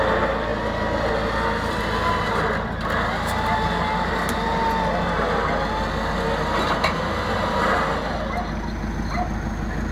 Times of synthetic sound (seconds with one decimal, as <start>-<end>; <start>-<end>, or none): none